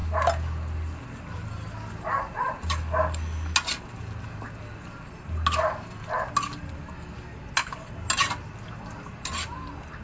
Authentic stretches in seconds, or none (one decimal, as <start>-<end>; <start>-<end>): 0.0-10.0